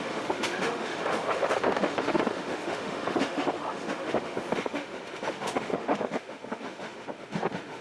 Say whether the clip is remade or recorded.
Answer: remade